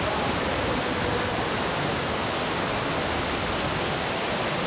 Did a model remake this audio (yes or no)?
no